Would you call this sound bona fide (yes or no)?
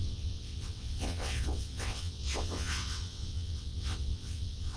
no